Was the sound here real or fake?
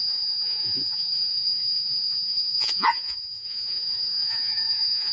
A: fake